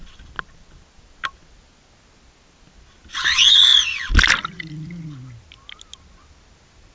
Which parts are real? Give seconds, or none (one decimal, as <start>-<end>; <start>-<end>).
0.0-6.9